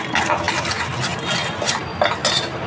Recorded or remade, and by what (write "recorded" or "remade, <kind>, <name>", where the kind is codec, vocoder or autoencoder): recorded